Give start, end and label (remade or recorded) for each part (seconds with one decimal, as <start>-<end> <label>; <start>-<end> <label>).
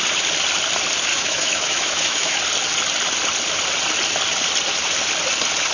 0.0-1.1 recorded; 1.1-2.4 remade; 2.4-5.7 recorded